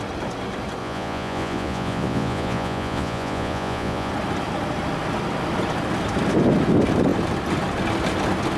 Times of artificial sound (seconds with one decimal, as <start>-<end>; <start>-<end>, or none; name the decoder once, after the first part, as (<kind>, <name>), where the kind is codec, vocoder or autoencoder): 0.8-4.1 (vocoder, Vocos)